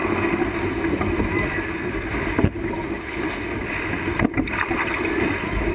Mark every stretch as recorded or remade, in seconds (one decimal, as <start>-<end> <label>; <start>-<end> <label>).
0.0-3.3 recorded; 3.3-5.7 remade